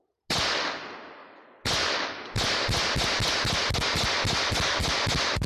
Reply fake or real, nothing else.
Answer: real